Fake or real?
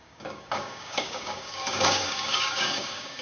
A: fake